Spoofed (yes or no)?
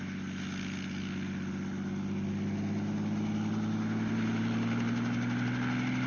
no